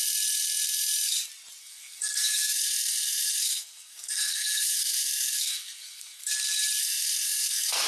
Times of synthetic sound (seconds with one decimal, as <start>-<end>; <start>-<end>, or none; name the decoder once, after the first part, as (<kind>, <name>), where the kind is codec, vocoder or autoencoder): 1.6-6.3 (codec, SNAC); 6.8-7.9